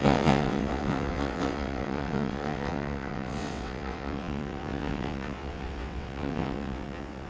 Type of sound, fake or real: fake